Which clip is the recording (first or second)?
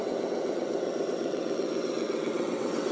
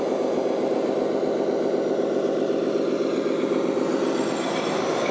second